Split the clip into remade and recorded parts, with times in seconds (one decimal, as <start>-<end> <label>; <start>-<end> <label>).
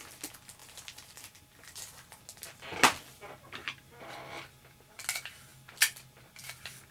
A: 0.0-6.9 recorded